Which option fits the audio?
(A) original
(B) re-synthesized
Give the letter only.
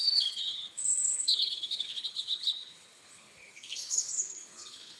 B